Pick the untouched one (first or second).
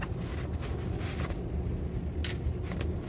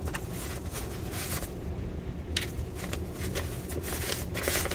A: first